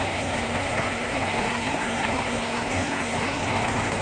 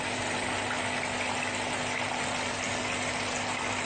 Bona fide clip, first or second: second